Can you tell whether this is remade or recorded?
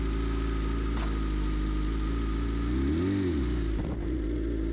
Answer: recorded